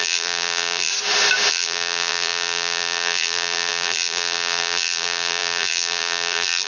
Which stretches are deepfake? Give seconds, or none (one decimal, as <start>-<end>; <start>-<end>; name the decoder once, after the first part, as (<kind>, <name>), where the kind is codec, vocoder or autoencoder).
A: 0.0-0.9 (vocoder, BigVGAN v2); 1.5-6.7